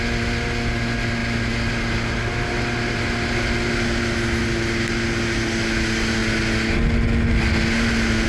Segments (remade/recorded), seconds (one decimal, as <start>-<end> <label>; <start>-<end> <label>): 0.0-8.3 recorded